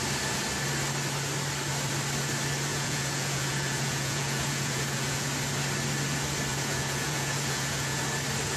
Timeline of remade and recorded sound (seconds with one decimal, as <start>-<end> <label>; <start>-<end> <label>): 0.0-2.7 recorded; 2.7-5.3 remade; 5.3-6.5 recorded; 6.5-8.0 remade; 8.0-8.6 recorded